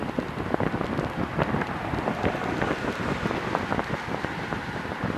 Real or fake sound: fake